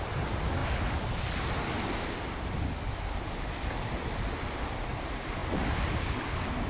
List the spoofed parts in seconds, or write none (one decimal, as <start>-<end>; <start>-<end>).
none